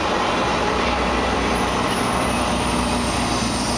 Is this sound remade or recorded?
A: recorded